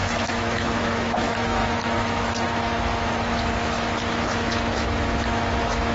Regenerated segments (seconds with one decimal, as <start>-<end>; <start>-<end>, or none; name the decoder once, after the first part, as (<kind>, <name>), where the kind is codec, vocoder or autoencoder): 0.0-5.9 (autoencoder, DAC-VAE)